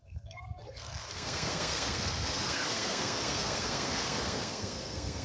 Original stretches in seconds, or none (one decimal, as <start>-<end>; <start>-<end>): none